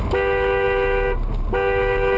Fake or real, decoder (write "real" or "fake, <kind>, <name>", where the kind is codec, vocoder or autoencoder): real